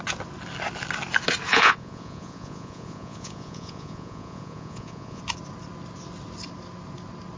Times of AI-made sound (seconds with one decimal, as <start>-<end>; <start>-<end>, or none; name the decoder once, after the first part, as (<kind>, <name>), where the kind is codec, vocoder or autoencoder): 1.5-5.2 (vocoder, Vocos)